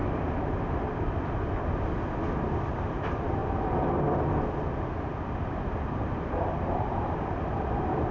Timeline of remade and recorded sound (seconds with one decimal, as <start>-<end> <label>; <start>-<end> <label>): 0.0-2.7 recorded; 2.7-3.4 remade; 3.4-5.4 recorded; 5.4-8.1 remade